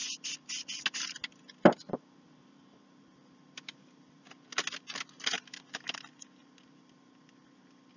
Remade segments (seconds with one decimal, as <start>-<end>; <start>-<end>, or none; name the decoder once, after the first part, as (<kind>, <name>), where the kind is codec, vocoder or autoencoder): none